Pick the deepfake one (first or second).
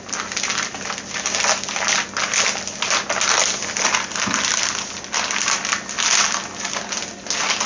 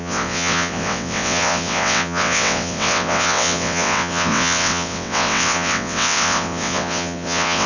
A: second